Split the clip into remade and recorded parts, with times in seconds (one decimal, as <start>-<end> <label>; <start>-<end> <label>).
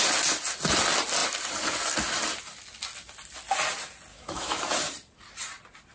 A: 0.0-4.1 recorded; 4.1-4.6 remade; 4.6-5.9 recorded